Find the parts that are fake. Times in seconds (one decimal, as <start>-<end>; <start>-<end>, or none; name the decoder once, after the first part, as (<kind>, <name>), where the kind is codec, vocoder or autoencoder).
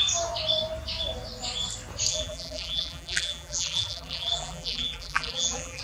2.1-5.8 (vocoder, BigVGAN v2)